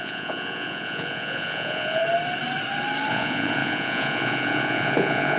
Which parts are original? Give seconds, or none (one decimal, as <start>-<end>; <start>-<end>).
2.0-3.1